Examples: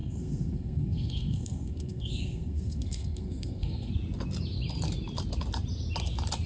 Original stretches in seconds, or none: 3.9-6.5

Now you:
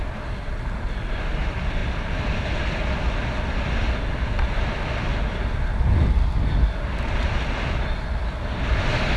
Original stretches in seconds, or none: 0.0-9.2

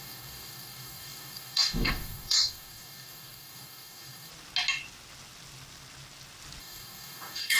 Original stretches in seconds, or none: 4.3-6.6

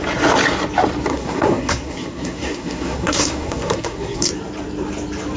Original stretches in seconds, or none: 0.0-1.1; 4.3-5.4

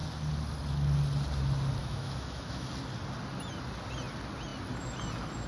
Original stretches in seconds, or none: 0.0-1.8; 2.7-5.5

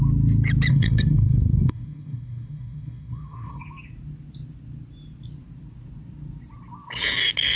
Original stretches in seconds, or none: 0.0-0.7; 3.6-7.6

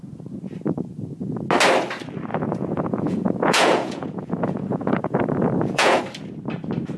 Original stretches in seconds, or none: 0.0-2.3; 6.0-7.0